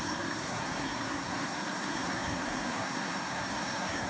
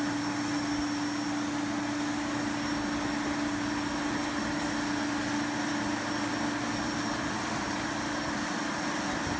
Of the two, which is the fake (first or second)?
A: first